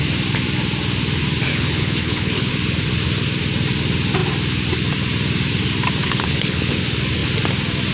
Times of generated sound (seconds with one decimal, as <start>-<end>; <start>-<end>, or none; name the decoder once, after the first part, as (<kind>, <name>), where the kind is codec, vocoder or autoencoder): 1.5-2.5 (codec, HILCodec); 6.0-6.8